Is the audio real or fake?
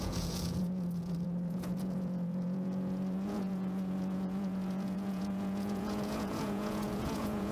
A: fake